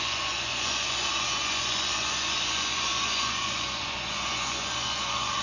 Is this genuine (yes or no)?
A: no